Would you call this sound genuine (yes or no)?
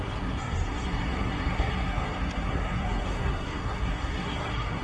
no